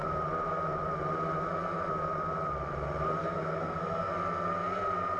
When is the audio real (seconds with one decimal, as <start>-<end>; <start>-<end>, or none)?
0.0-3.2; 4.1-5.2